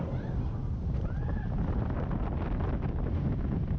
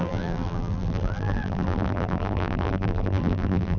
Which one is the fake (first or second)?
second